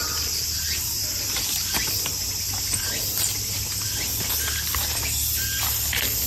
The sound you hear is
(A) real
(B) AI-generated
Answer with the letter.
A